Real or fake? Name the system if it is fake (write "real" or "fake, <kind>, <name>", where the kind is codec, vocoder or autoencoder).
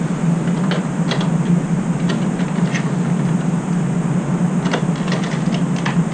real